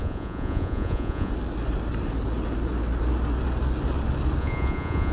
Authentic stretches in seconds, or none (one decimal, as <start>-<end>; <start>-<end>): 1.3-4.4